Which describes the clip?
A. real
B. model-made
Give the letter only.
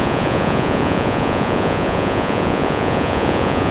B